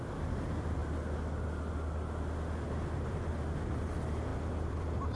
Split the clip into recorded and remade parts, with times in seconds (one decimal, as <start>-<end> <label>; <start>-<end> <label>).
0.0-4.3 recorded; 4.3-5.2 remade

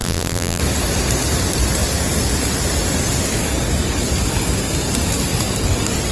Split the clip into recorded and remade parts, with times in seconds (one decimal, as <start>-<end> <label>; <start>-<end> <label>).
0.0-0.6 remade; 0.6-6.1 recorded

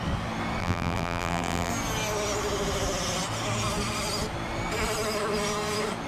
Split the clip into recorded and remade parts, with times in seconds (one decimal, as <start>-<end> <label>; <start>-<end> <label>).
0.0-0.6 recorded; 0.6-1.7 remade; 1.7-6.1 recorded

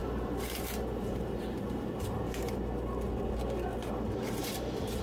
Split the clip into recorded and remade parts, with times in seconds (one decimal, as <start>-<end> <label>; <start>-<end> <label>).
0.0-2.6 remade; 2.6-3.7 recorded; 3.7-5.0 remade

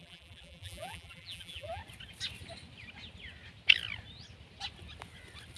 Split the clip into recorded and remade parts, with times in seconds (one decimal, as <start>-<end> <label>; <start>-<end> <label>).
0.0-1.8 remade; 1.8-5.6 recorded

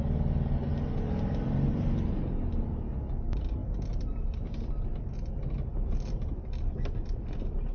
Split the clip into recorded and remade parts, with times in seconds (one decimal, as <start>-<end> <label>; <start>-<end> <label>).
0.0-7.7 recorded